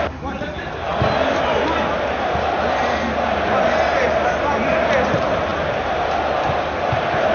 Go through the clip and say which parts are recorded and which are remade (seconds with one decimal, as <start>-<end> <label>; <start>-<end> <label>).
0.0-7.3 recorded